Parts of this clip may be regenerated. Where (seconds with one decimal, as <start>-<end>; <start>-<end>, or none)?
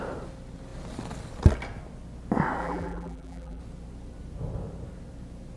2.6-3.6